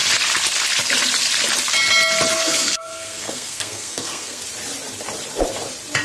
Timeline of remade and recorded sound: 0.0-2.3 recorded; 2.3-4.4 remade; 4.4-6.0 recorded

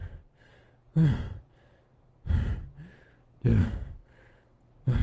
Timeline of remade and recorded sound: 0.0-0.5 remade; 0.5-3.6 recorded; 3.6-4.6 remade; 4.6-5.0 recorded